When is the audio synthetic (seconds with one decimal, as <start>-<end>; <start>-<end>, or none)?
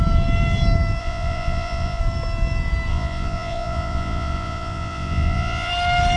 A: 1.0-2.0; 2.9-5.7